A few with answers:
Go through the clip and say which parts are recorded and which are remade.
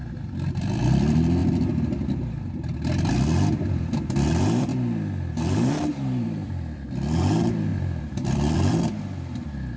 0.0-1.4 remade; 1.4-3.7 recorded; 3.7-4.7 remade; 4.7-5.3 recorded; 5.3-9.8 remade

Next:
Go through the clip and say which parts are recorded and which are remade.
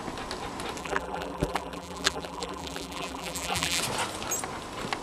0.0-0.8 recorded; 0.8-3.8 remade; 3.8-5.0 recorded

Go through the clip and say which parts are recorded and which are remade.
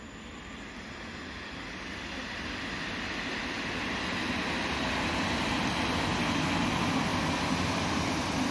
0.0-8.5 recorded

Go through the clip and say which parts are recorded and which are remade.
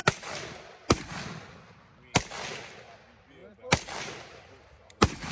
0.0-3.4 recorded; 3.4-5.3 remade